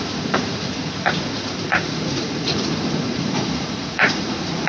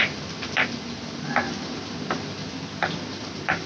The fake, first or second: first